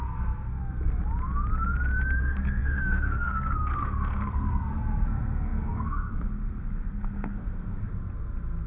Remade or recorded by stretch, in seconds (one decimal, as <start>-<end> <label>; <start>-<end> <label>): 0.0-0.6 remade; 0.6-2.2 recorded; 2.2-7.9 remade; 7.9-8.7 recorded